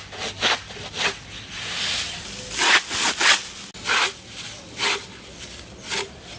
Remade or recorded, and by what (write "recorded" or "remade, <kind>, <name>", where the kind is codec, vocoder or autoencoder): recorded